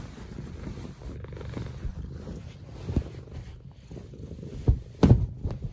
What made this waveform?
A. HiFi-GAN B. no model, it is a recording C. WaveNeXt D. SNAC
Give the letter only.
B